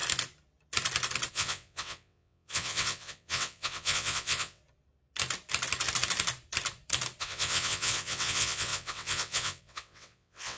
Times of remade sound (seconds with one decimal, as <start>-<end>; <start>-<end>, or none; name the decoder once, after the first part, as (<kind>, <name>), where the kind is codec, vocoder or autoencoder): 1.3-4.6 (vocoder, WaveNeXt); 7.2-10.6